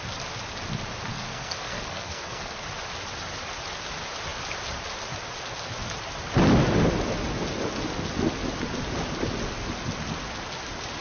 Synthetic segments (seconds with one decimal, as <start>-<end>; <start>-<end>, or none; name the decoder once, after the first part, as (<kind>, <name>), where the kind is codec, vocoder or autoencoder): 1.1-2.6 (codec, SNAC)